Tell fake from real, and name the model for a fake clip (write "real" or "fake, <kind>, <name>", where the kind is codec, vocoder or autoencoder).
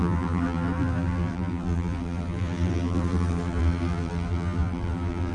fake, vocoder, BigVGAN v2